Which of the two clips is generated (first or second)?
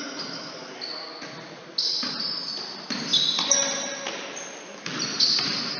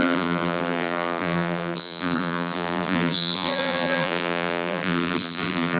second